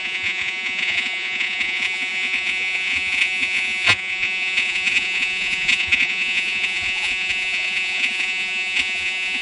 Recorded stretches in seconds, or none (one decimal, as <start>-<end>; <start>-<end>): none